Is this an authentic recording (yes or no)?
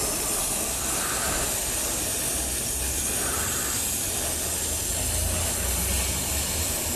yes